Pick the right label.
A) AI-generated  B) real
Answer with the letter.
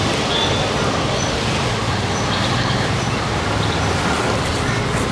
B